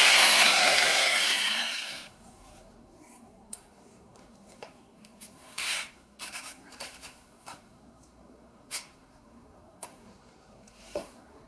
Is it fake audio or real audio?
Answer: fake